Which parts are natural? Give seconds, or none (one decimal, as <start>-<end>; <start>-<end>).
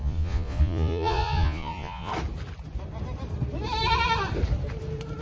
2.1-5.2